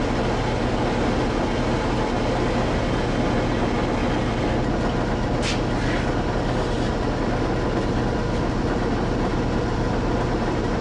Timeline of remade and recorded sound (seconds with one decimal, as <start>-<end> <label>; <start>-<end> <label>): 0.0-9.3 recorded; 9.3-10.8 remade